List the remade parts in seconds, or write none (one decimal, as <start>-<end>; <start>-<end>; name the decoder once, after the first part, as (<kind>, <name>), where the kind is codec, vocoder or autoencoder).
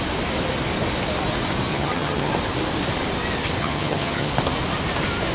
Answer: 1.7-2.3 (vocoder, HiFi-GAN); 3.6-4.3